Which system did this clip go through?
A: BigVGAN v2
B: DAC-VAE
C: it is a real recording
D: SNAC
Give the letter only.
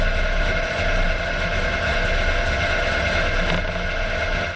C